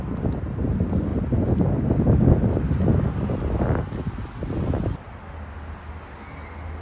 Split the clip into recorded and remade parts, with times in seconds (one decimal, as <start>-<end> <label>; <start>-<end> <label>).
0.0-6.8 recorded